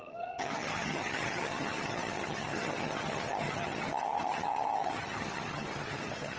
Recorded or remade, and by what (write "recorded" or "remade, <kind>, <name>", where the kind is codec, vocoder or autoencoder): remade, vocoder, HiFi-GAN